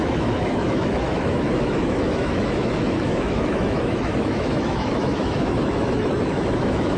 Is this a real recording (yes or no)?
no